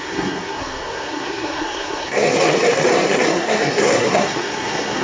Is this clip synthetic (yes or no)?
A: yes